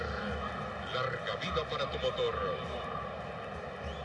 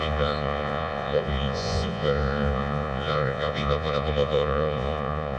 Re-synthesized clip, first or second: second